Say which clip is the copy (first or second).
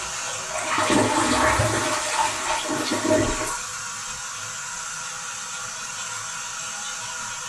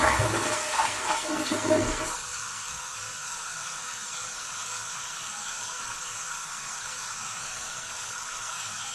second